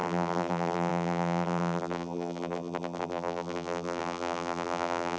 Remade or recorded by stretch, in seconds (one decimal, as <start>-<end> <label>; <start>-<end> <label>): 0.0-5.2 remade